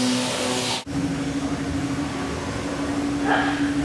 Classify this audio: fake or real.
real